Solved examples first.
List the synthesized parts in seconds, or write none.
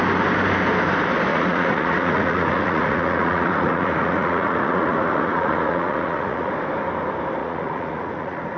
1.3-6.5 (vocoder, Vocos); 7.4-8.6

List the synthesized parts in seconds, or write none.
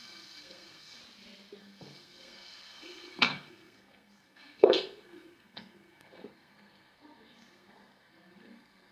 0.0-1.0 (codec, SNAC); 1.6-8.9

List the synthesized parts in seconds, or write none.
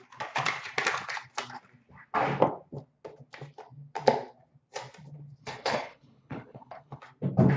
5.4-7.0 (codec, HILCodec)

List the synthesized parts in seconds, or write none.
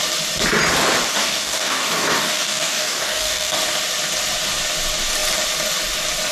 1.2-3.5 (codec, DAC)